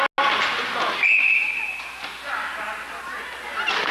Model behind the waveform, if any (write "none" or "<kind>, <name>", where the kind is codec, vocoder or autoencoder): none